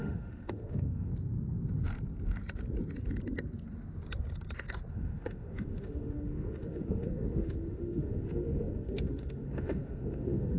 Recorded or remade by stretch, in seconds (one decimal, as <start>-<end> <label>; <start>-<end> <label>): 0.0-1.1 remade; 1.1-4.9 recorded; 4.9-10.6 remade